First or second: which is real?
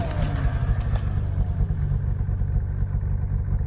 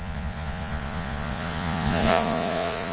first